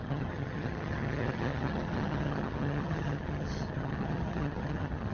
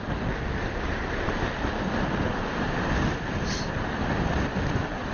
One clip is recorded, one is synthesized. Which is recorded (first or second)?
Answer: second